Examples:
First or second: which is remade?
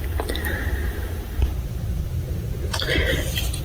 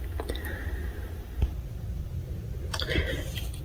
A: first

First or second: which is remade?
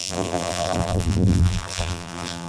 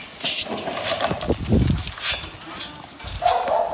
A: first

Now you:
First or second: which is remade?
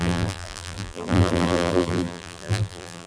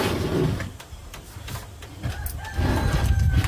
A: first